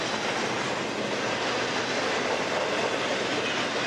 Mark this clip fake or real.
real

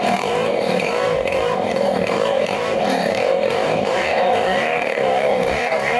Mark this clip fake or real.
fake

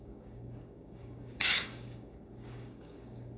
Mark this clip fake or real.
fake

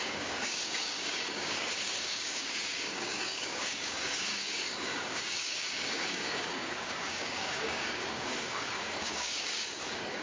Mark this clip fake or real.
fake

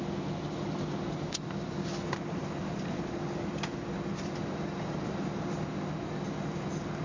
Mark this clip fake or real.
real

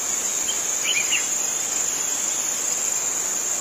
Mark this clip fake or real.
real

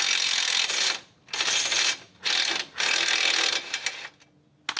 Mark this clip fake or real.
real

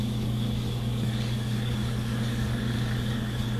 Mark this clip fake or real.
fake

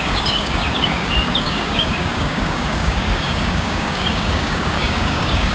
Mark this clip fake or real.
fake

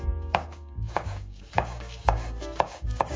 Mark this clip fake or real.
fake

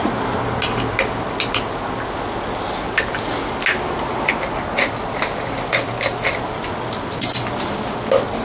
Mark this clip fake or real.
real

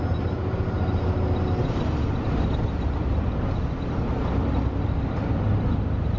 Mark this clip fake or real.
real